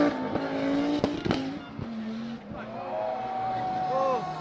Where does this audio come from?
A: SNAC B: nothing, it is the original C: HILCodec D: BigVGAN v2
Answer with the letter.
B